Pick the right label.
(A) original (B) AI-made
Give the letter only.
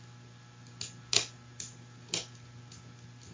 A